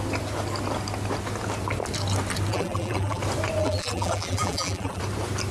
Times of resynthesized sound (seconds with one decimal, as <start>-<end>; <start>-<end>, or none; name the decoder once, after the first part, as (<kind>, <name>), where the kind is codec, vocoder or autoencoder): 2.5-3.2 (vocoder, BigVGAN v2); 3.6-5.0